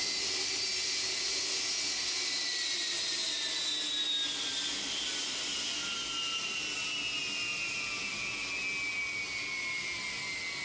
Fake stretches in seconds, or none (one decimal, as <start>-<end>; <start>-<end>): none